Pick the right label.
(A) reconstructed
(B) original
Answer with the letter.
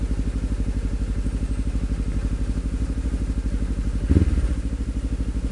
B